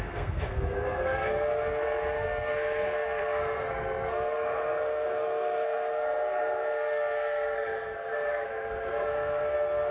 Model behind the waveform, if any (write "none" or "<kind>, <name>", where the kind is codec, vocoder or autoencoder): codec, SNAC